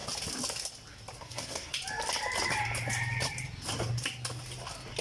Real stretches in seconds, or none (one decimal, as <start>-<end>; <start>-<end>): 0.0-1.2; 1.7-5.0